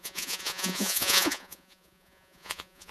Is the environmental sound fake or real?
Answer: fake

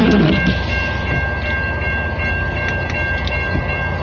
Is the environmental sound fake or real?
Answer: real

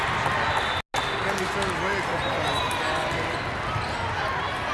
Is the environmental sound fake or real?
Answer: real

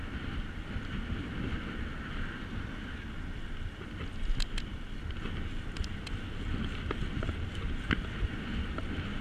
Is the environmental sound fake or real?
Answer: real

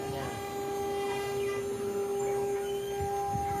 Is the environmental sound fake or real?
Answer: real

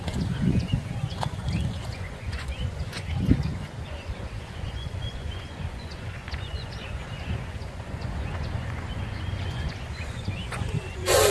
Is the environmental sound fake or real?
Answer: fake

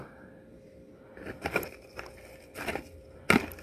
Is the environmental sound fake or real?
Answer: real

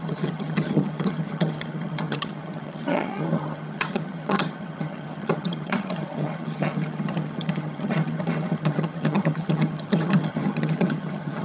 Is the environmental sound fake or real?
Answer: fake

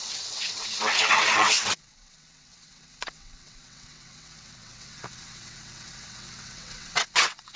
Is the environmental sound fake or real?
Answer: fake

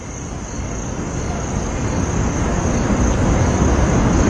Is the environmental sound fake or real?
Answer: real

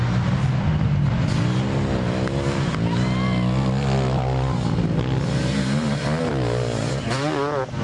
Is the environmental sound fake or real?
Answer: real